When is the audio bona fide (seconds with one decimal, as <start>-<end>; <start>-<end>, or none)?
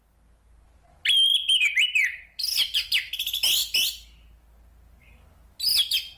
0.0-1.3; 3.1-6.2